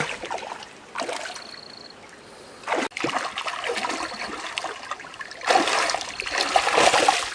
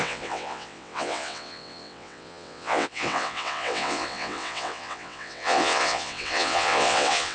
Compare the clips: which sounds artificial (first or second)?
second